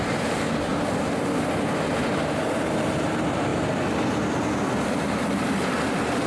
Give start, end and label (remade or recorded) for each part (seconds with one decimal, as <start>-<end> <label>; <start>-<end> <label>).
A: 0.0-0.7 remade; 0.7-2.4 recorded; 2.4-3.5 remade; 3.5-4.8 recorded; 4.8-6.3 remade